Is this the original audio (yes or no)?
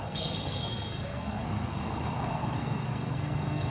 no